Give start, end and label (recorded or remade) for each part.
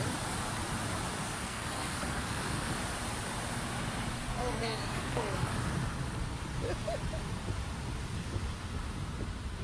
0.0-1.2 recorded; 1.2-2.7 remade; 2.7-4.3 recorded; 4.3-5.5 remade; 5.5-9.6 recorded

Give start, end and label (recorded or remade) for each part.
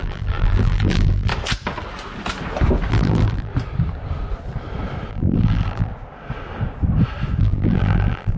0.0-1.3 remade; 1.3-2.9 recorded; 2.9-3.5 remade; 3.5-5.1 recorded; 5.1-5.9 remade; 5.9-7.4 recorded; 7.4-8.4 remade